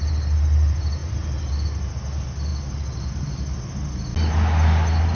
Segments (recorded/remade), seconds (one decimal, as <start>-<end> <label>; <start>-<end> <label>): 0.0-5.1 recorded